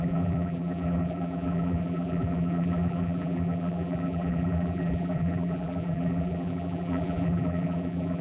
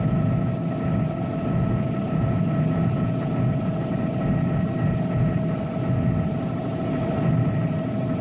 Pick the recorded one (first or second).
second